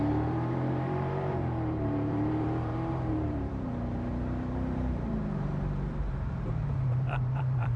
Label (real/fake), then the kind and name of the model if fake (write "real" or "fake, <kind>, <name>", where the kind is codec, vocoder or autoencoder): fake, vocoder, BigVGAN v2